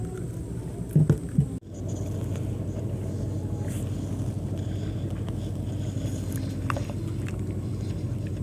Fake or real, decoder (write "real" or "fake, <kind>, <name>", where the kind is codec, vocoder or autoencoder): real